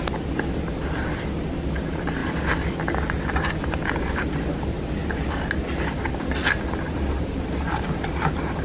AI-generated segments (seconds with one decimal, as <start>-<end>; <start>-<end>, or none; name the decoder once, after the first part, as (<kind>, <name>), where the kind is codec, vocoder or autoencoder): none

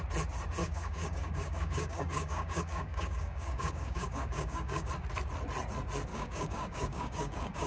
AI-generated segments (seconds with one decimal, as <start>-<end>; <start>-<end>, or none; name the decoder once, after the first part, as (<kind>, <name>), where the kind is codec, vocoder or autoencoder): 0.6-4.9 (codec, DAC); 6.1-7.7

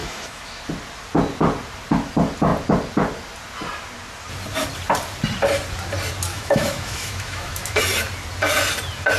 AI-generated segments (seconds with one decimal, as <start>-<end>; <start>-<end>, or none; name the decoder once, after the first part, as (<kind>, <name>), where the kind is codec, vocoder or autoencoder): 0.0-0.6 (autoencoder, DAC-VAE); 6.3-7.8

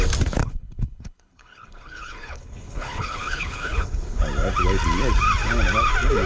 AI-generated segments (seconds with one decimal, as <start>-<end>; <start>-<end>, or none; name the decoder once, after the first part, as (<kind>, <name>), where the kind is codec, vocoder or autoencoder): 0.4-4.2 (codec, HILCodec)

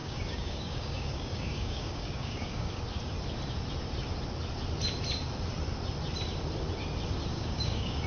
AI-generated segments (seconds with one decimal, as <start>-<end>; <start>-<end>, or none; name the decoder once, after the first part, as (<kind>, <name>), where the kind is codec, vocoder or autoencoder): 0.0-2.8 (codec, DAC); 7.3-8.1